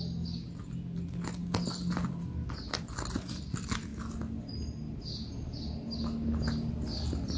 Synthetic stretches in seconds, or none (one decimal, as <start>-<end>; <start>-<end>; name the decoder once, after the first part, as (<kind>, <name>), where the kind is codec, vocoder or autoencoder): none